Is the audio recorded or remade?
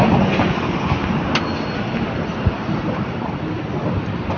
recorded